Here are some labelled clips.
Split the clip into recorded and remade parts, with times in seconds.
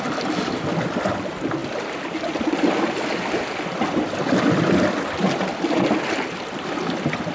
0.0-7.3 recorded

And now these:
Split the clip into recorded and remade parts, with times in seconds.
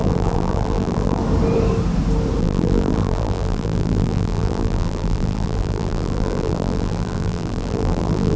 0.0-1.2 remade; 1.2-2.4 recorded; 2.4-8.4 remade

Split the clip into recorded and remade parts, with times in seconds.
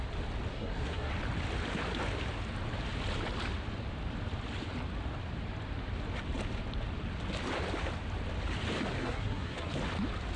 0.0-0.5 recorded; 0.5-1.1 remade; 1.1-9.0 recorded; 9.0-9.7 remade; 9.7-10.4 recorded